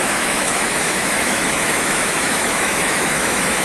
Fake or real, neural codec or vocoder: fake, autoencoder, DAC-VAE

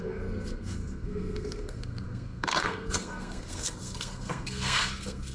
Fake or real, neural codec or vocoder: fake, codec, SNAC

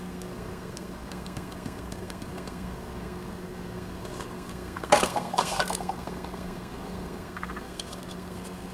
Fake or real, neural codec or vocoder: fake, codec, SNAC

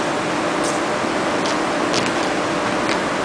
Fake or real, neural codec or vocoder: real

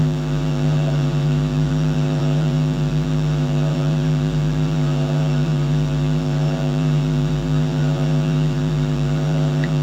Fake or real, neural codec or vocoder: fake, vocoder, BigVGAN v2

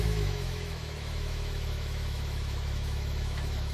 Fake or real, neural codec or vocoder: fake, autoencoder, DAC-VAE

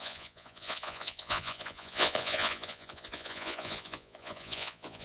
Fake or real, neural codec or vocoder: fake, vocoder, Vocos